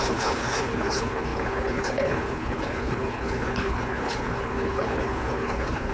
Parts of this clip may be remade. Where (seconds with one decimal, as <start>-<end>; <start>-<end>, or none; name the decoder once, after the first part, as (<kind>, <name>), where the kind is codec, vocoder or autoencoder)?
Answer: 0.0-5.9 (codec, HILCodec)

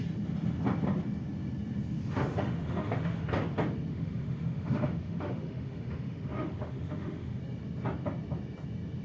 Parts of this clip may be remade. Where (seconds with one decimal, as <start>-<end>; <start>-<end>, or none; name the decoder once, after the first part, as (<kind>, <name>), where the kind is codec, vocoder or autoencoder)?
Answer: 2.0-3.2 (autoencoder, DAC-VAE); 3.9-7.4

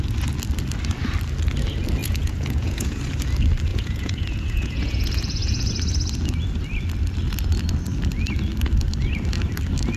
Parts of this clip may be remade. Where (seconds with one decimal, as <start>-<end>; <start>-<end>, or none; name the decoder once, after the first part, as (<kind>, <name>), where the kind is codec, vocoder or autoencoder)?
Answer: 2.0-3.0 (vocoder, Vocos); 3.7-5.7

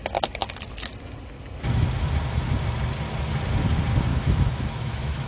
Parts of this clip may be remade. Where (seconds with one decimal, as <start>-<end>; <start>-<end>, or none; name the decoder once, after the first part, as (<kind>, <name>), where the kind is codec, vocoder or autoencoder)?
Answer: 4.1-5.3 (autoencoder, DAC-VAE)

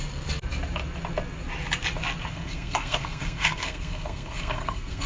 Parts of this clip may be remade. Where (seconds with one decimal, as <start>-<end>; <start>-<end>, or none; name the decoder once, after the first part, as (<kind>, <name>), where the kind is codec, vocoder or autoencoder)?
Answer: 2.3-5.1 (codec, SNAC)

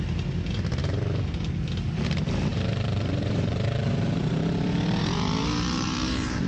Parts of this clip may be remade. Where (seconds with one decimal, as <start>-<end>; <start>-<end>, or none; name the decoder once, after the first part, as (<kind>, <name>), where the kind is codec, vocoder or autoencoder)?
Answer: 2.5-6.5 (vocoder, BigVGAN v2)